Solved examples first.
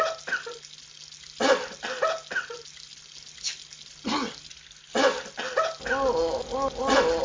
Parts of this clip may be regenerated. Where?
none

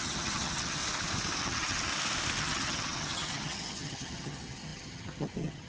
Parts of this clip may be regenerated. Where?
0.0-0.8 (vocoder, HiFi-GAN); 1.4-1.9; 2.4-5.7

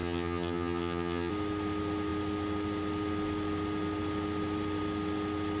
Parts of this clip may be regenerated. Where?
0.0-1.3 (vocoder, HiFi-GAN)

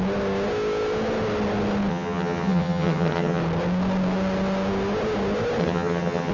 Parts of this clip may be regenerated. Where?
1.9-3.4 (vocoder, HiFi-GAN); 5.6-6.3

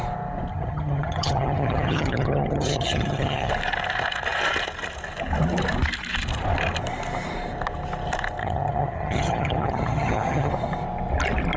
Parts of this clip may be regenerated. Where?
0.5-3.5 (vocoder, HiFi-GAN); 8.4-10.5

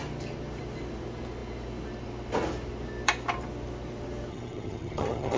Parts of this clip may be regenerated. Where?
4.3-5.4 (vocoder, HiFi-GAN)

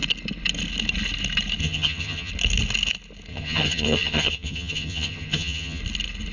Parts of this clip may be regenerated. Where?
1.6-2.3 (vocoder, HiFi-GAN); 3.3-5.8

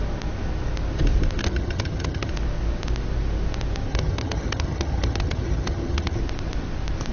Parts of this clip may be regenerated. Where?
1.4-2.3 (vocoder, HiFi-GAN); 3.9-6.2